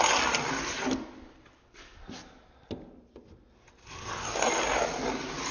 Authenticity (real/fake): real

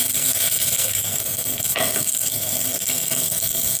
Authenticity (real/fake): fake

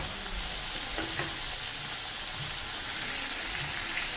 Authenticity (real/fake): real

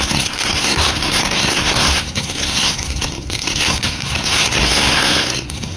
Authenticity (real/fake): fake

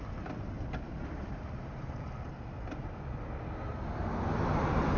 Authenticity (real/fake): real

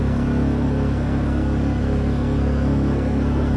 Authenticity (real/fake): fake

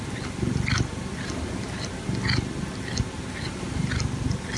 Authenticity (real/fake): real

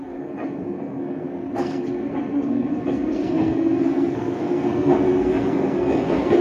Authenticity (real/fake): fake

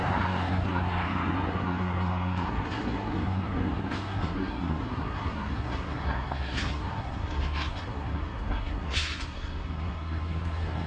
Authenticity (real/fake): fake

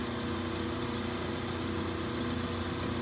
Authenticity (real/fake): real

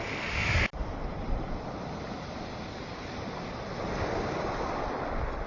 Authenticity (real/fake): real